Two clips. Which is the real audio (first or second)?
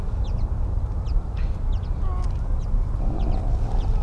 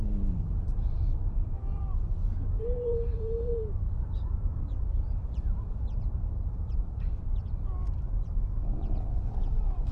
first